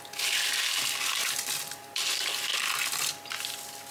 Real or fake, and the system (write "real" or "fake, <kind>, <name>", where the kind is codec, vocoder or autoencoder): real